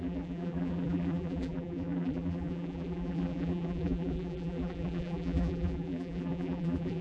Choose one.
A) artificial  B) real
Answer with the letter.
A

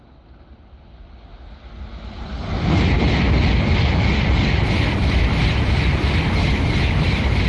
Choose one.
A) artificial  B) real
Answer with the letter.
B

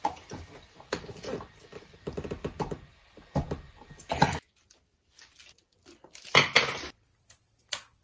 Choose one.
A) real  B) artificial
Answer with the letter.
B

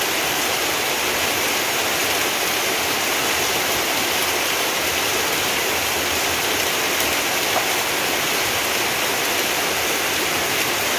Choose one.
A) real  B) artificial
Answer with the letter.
B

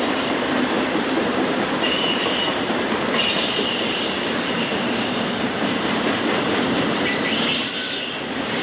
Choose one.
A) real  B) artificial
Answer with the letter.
B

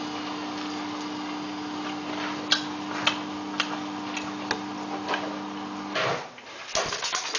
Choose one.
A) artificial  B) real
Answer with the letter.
B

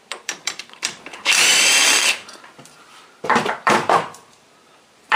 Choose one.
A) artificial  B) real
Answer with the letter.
A